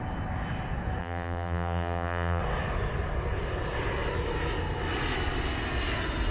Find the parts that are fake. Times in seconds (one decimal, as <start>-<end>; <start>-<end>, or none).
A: 1.0-2.4